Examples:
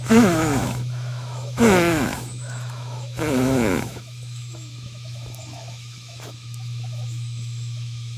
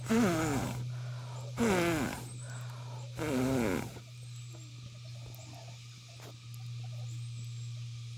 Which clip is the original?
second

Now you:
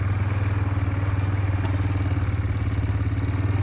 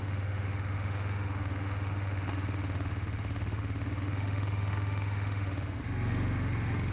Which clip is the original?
first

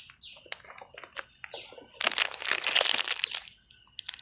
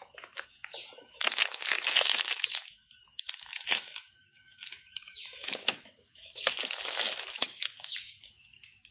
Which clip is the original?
first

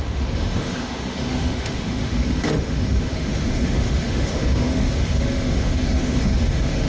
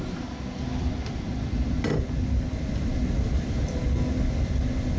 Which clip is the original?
second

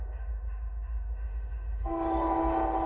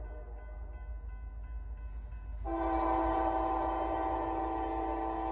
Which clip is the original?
second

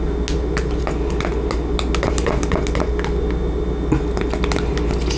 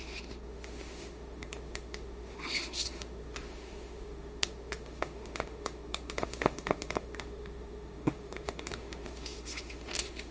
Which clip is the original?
first